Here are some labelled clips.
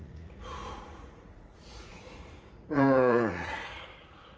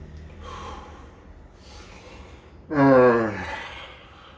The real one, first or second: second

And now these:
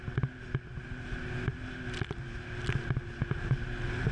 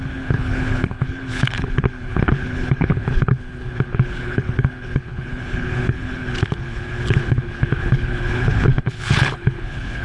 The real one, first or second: first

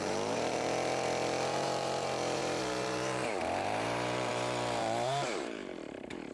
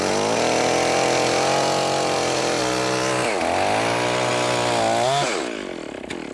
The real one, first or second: second